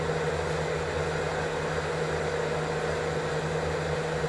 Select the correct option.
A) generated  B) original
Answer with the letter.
B